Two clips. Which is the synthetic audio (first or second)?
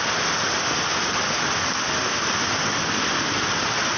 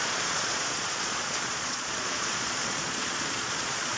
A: second